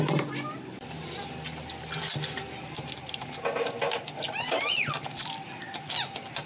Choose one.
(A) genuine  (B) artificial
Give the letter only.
A